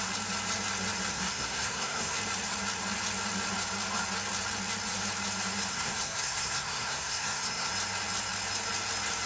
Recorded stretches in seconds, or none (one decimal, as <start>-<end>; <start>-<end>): 0.0-1.1; 2.2-5.7; 7.7-9.3